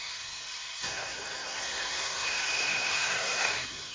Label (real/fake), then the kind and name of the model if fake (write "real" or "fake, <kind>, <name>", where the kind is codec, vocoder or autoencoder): fake, codec, SNAC